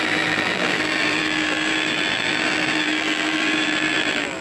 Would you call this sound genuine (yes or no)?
no